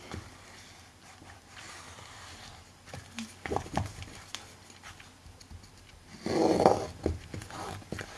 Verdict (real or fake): real